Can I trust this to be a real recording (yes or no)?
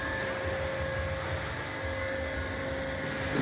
yes